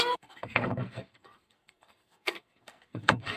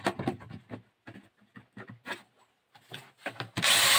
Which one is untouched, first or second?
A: second